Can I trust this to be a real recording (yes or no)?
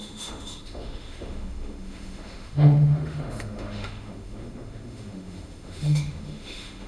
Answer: no